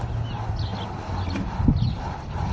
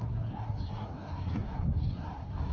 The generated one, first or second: second